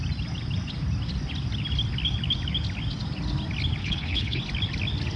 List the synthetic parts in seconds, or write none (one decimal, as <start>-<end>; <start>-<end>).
3.8-4.4